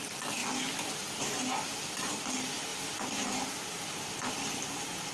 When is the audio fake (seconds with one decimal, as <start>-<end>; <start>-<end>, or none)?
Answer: none